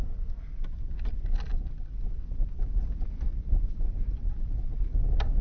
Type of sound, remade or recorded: recorded